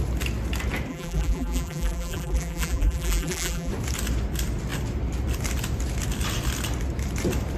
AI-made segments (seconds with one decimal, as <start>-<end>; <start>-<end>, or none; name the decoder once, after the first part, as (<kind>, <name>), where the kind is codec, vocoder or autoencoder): 0.9-3.7 (vocoder, BigVGAN v2)